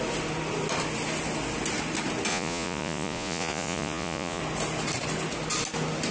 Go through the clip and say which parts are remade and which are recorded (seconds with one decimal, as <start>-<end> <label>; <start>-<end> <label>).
0.0-2.3 recorded; 2.3-4.4 remade; 4.4-6.1 recorded